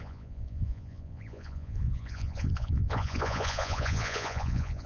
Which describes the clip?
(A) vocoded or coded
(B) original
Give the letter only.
A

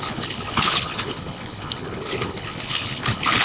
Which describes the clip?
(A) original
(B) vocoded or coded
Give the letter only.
B